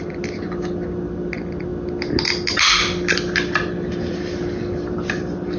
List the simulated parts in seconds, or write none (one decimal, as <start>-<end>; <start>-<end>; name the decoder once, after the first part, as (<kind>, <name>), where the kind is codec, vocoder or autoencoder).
none